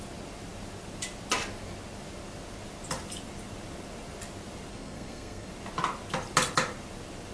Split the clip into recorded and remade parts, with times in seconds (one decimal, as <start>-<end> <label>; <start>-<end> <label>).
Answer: 0.0-4.7 recorded; 4.7-5.5 remade; 5.5-7.3 recorded